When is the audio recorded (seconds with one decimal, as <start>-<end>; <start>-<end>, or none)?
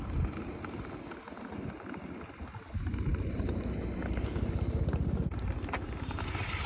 0.0-6.7